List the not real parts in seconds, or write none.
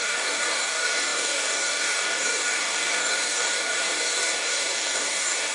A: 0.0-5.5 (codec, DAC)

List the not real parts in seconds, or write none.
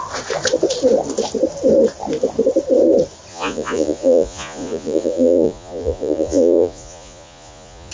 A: 3.3-7.9 (vocoder, Vocos)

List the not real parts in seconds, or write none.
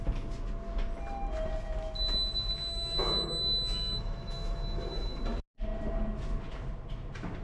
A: 2.7-5.2 (autoencoder, DAC-VAE)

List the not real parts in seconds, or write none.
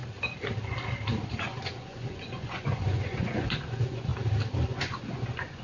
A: 1.3-4.1 (vocoder, Vocos); 4.7-5.6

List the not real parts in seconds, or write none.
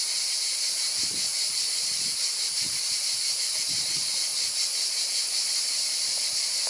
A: 0.0-6.7 (vocoder, BigVGAN v2)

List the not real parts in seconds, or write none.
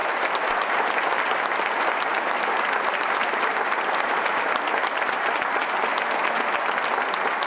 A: 4.8-5.7 (vocoder, BigVGAN v2)